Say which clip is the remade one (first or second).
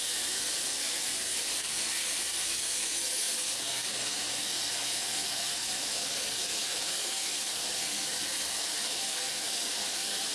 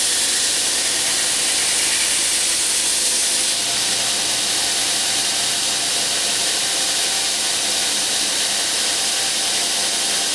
first